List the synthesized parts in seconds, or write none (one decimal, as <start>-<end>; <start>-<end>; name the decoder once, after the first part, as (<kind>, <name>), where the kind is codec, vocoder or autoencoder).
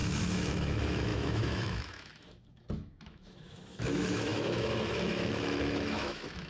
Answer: 0.0-6.5 (autoencoder, DAC-VAE)